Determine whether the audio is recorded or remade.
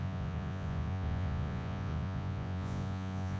remade